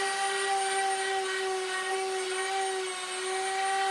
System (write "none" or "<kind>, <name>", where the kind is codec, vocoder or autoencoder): none